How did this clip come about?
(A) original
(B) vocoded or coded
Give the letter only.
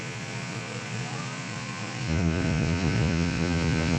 B